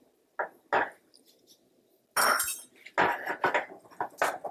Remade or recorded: recorded